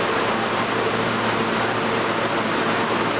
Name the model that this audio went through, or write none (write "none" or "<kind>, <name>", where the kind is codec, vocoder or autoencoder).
none